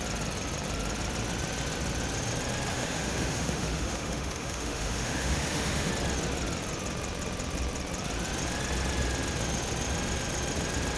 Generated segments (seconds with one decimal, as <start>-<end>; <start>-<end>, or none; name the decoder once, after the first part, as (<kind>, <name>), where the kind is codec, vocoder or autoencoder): 2.7-5.9 (autoencoder, DAC-VAE)